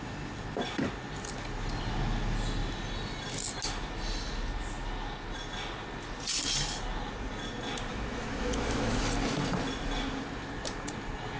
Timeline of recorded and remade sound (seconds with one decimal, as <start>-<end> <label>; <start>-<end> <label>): 0.0-7.9 recorded; 7.9-9.0 remade; 9.0-11.4 recorded